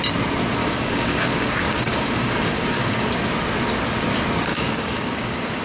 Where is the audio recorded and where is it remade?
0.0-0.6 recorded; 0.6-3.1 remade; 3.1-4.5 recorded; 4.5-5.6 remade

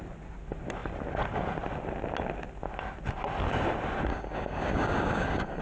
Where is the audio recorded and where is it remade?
0.0-4.1 recorded; 4.1-5.6 remade

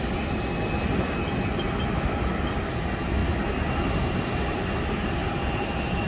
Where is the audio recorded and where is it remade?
0.0-6.1 recorded

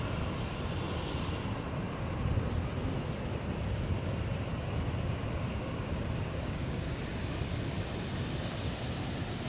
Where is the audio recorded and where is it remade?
0.0-5.5 recorded; 5.5-7.0 remade; 7.0-9.5 recorded

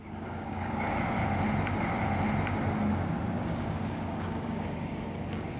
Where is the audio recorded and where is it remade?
0.0-1.2 remade; 1.2-3.4 recorded; 3.4-5.6 remade